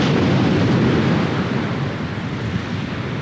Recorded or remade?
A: recorded